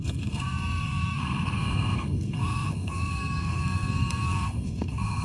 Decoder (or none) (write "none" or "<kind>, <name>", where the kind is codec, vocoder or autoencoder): codec, SNAC